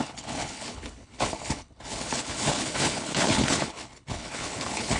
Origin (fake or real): fake